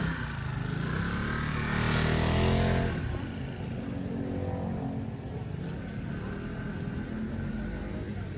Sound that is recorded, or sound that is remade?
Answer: recorded